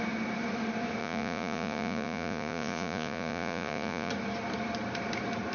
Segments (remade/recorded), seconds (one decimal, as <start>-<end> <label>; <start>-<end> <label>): 0.0-1.0 recorded; 1.0-4.1 remade; 4.1-5.5 recorded